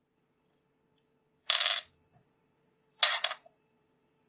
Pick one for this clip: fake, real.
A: fake